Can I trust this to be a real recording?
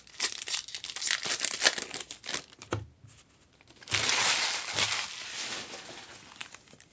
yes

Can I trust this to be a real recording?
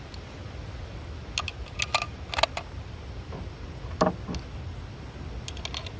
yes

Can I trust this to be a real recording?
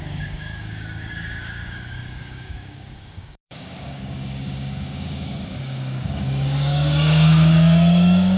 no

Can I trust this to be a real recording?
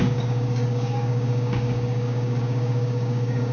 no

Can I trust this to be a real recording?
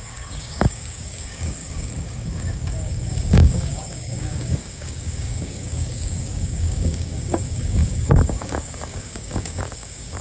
no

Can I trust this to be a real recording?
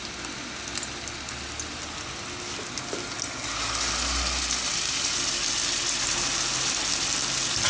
yes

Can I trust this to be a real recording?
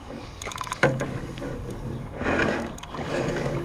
no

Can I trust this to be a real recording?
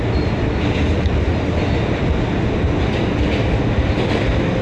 yes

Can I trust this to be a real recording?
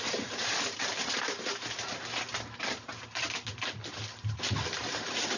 yes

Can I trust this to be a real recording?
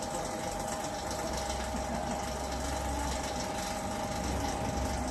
yes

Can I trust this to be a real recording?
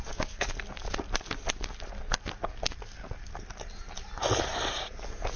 yes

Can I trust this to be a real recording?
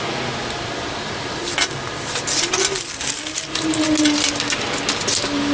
yes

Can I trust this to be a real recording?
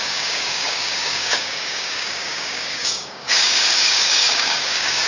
no